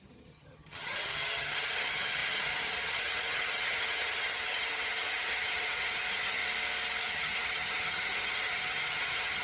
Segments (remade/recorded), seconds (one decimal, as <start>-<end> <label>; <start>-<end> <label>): 0.0-6.4 remade; 6.4-7.0 recorded; 7.0-9.4 remade